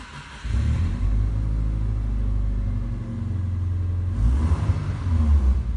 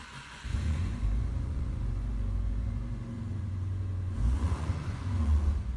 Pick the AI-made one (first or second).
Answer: second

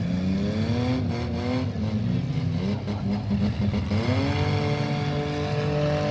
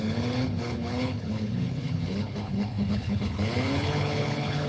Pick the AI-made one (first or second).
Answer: second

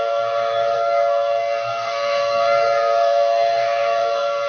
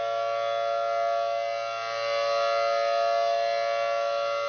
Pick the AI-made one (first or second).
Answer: first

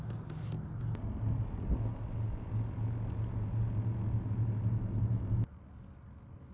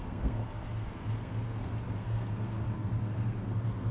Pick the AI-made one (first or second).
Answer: second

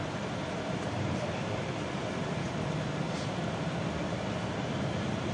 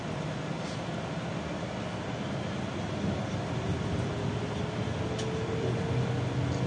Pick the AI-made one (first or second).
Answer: first